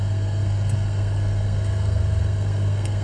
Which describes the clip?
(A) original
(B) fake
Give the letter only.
B